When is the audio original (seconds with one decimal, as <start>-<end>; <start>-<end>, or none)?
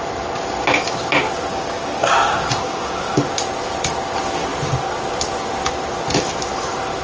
0.0-1.5; 3.2-7.0